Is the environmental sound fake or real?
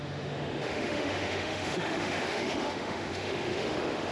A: fake